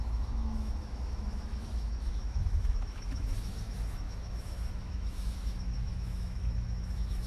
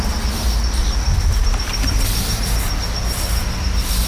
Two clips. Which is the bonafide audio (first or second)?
second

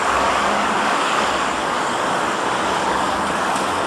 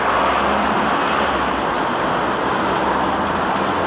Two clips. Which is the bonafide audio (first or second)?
second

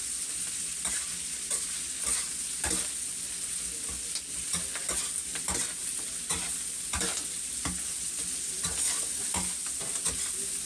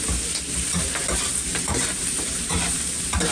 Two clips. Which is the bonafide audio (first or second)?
first